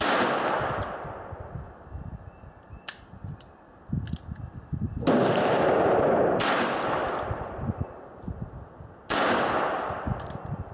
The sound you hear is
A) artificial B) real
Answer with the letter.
B